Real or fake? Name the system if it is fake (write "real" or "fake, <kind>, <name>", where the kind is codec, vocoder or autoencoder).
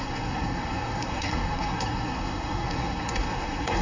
fake, codec, SNAC